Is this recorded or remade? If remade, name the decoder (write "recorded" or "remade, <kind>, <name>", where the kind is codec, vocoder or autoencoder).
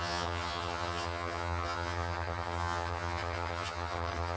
remade, vocoder, HiFi-GAN